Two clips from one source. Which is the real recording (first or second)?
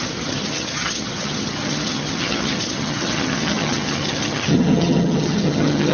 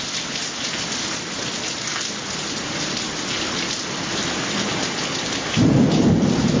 second